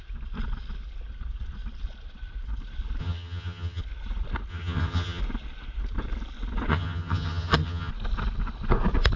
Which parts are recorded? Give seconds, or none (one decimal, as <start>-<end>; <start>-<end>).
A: 0.0-3.0; 3.8-4.5; 5.2-6.7; 7.9-9.2